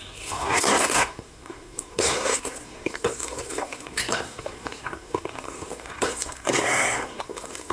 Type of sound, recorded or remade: remade